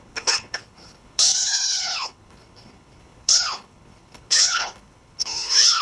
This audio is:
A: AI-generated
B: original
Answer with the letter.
A